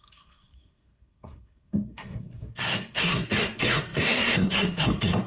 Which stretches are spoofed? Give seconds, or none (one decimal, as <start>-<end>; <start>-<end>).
0.0-5.3